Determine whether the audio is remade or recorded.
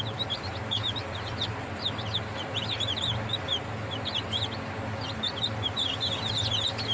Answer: recorded